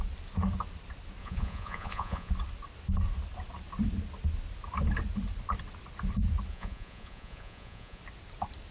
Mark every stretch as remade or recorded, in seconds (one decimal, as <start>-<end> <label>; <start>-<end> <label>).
0.0-1.2 recorded; 1.2-2.3 remade; 2.3-6.5 recorded; 6.5-8.0 remade; 8.0-8.7 recorded